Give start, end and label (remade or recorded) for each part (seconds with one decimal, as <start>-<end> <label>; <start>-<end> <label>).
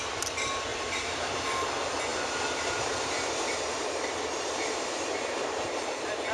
0.0-0.7 recorded; 0.7-1.3 remade; 1.3-2.1 recorded; 2.1-6.3 remade